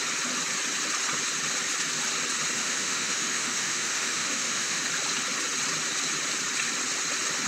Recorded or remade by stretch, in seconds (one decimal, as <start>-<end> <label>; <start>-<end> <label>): 0.0-2.6 recorded; 2.6-4.8 remade; 4.8-7.5 recorded